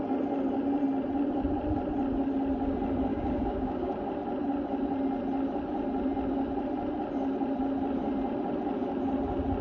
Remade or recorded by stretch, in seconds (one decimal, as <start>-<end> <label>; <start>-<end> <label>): 0.0-3.1 recorded; 3.1-4.0 remade; 4.0-9.6 recorded